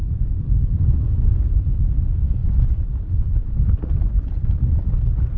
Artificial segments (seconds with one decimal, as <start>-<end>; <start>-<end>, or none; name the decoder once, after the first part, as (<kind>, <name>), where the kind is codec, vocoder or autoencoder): 2.4-3.1 (vocoder, BigVGAN v2)